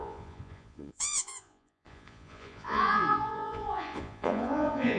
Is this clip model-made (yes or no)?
yes